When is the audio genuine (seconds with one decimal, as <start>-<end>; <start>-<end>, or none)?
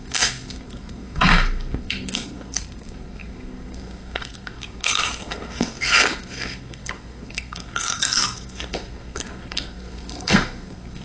none